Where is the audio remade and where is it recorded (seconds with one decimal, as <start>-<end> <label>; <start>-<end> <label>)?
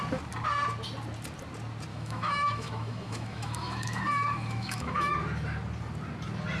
0.0-1.9 recorded; 1.9-5.1 remade; 5.1-6.6 recorded